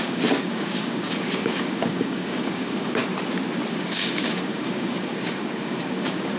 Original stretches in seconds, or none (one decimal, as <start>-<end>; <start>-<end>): 3.0-3.7